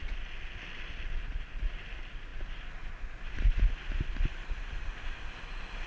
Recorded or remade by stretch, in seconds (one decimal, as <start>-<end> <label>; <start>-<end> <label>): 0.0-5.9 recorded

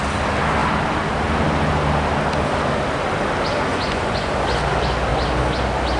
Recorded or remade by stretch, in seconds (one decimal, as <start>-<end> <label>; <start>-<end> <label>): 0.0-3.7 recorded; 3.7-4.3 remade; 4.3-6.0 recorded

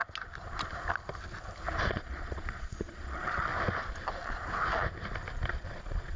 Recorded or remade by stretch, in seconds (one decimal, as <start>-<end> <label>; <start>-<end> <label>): 0.0-1.9 recorded; 1.9-3.5 remade; 3.5-5.5 recorded; 5.5-6.2 remade